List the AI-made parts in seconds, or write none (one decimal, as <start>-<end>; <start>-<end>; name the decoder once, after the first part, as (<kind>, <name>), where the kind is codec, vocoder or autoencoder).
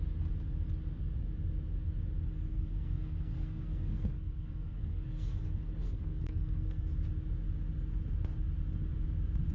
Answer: 2.5-6.9 (codec, SNAC)